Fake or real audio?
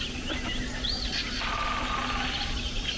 real